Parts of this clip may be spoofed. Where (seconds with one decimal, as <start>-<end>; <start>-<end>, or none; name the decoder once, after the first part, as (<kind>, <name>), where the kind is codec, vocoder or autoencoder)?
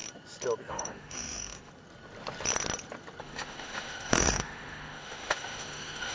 0.7-1.7 (autoencoder, DAC-VAE); 3.2-6.1